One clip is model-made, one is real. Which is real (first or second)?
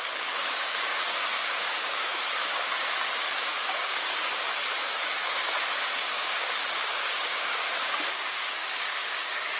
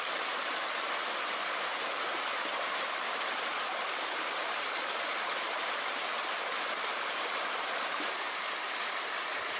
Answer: second